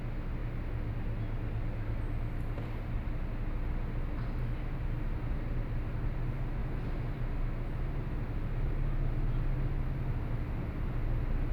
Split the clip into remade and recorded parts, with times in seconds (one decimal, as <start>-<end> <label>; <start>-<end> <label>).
0.0-11.5 recorded